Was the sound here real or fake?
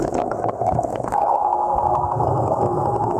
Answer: fake